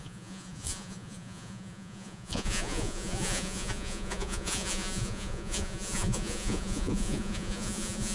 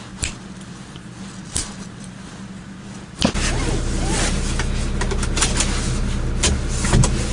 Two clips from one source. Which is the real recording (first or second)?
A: second